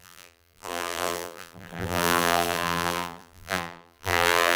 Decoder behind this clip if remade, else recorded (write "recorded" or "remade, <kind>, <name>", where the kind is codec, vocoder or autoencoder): remade, vocoder, BigVGAN v2